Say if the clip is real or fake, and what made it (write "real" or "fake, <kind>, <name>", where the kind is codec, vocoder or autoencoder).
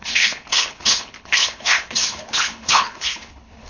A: fake, codec, HILCodec